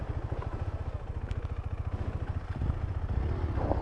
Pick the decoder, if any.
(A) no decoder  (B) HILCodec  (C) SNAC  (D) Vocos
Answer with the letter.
A